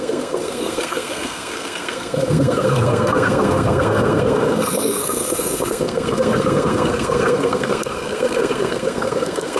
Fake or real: fake